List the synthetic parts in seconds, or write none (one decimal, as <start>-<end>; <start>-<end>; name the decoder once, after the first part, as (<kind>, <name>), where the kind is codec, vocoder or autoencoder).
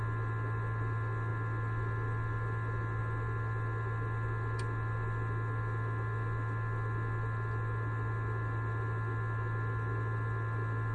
none